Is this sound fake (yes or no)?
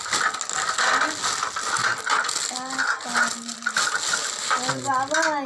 no